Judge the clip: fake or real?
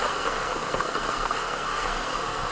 fake